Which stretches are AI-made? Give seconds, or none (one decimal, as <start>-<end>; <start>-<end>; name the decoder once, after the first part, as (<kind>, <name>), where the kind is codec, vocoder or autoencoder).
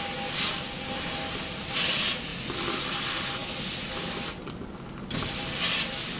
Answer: none